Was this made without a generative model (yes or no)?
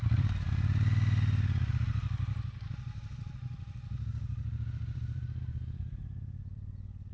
no